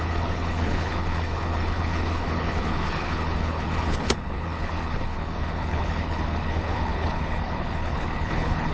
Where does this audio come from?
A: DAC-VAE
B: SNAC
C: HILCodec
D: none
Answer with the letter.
C